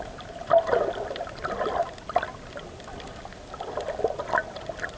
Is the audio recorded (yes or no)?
yes